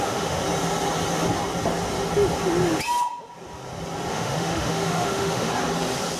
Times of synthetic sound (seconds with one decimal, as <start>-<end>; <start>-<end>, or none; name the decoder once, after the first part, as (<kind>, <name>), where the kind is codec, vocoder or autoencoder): 0.0-0.4 (autoencoder, DAC-VAE); 4.1-5.5